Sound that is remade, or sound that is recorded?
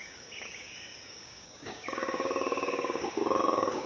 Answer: remade